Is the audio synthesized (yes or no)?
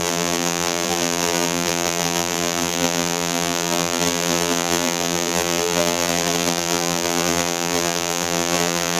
yes